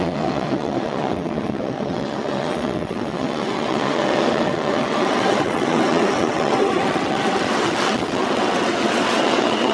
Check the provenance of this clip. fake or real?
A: fake